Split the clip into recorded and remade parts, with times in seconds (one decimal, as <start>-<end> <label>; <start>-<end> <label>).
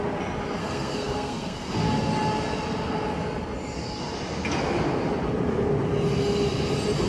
0.0-0.6 recorded; 0.6-1.8 remade; 1.8-7.1 recorded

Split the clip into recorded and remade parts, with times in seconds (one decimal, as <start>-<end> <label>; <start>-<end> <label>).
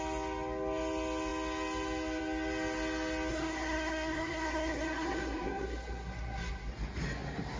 0.0-3.3 recorded; 3.3-6.7 remade; 6.7-7.6 recorded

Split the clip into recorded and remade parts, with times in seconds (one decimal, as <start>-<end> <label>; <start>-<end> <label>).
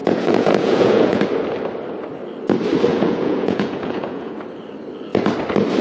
0.0-1.2 remade; 1.2-2.9 recorded; 2.9-4.3 remade; 4.3-5.8 recorded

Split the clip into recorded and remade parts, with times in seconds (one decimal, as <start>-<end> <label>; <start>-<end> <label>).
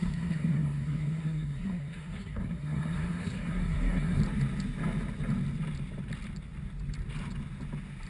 0.0-4.2 remade; 4.2-8.1 recorded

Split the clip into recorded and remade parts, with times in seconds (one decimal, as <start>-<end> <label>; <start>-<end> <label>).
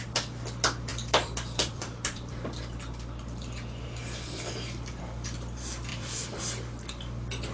0.0-0.9 recorded; 0.9-5.0 remade; 5.0-5.9 recorded; 5.9-6.4 remade; 6.4-7.5 recorded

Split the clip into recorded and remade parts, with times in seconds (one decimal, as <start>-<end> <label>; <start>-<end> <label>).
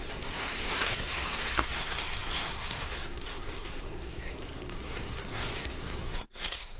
0.0-6.8 remade